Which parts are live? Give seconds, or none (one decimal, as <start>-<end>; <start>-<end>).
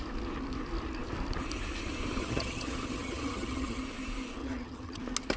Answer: 0.0-2.2; 3.8-4.4; 5.0-5.4